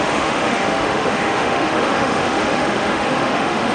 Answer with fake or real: fake